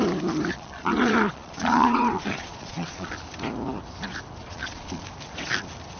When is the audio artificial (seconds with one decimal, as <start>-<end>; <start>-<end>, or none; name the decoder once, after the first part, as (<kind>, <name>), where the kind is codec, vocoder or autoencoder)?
0.5-3.1 (vocoder, Vocos); 4.4-5.0